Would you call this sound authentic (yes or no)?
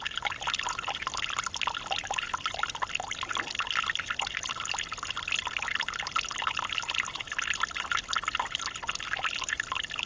yes